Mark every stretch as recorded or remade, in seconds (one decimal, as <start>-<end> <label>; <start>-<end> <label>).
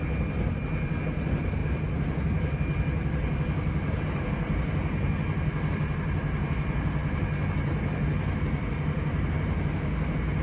0.0-10.4 recorded